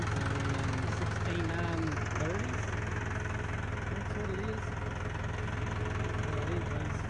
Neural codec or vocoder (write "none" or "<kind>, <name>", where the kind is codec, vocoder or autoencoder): none